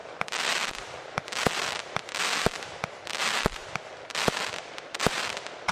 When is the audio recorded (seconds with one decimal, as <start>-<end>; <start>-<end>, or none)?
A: 0.0-0.7